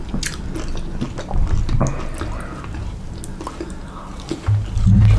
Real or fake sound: real